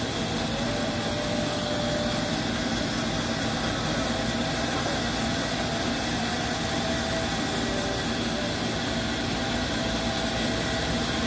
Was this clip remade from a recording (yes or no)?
no